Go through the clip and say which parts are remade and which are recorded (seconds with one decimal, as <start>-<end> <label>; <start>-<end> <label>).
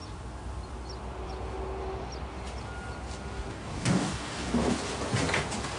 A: 0.0-3.5 recorded; 3.5-4.6 remade; 4.6-5.8 recorded